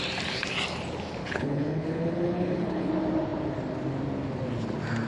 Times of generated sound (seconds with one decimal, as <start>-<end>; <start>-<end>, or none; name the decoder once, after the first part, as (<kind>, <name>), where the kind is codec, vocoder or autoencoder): 1.2-2.9 (codec, HILCodec)